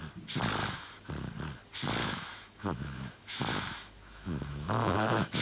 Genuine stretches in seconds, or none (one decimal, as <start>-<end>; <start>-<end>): 0.0-0.6; 1.1-2.0